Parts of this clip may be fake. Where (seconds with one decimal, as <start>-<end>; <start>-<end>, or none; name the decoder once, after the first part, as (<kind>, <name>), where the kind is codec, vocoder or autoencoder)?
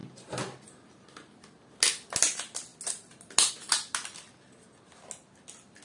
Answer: none